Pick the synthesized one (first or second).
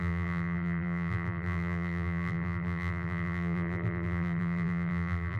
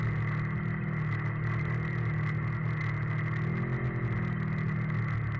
first